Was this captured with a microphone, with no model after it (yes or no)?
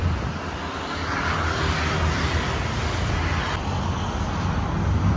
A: yes